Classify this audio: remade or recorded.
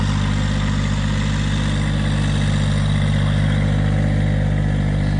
recorded